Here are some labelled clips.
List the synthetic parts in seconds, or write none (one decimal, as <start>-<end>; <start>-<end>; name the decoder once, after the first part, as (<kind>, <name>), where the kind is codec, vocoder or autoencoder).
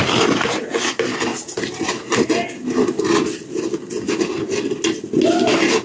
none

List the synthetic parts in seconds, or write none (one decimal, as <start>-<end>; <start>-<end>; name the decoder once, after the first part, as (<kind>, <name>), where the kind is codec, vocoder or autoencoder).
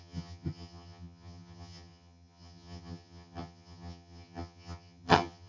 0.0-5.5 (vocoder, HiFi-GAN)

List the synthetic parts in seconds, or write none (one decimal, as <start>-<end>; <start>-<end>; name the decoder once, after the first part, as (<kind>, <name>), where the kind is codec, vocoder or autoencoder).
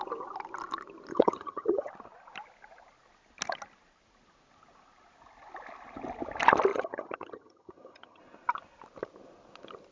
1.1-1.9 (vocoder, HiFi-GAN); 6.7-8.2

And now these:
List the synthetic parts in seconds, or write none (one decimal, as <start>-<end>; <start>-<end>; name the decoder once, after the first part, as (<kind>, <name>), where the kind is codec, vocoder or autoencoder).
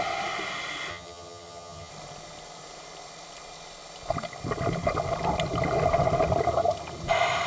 0.9-1.9 (vocoder, HiFi-GAN)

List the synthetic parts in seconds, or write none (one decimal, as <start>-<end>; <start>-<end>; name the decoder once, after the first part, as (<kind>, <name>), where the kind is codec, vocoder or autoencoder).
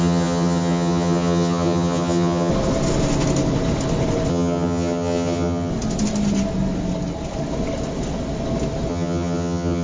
0.0-2.5 (vocoder, HiFi-GAN); 4.3-5.7; 8.9-9.8